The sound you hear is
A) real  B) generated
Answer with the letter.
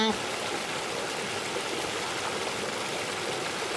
A